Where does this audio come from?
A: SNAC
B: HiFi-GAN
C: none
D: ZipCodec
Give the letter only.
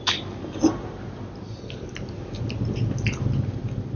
C